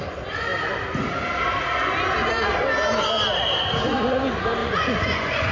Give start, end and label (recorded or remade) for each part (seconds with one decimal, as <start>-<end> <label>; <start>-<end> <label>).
0.0-4.6 recorded; 4.6-5.5 remade